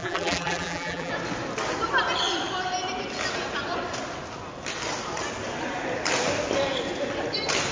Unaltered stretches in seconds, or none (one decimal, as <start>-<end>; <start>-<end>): 1.1-7.7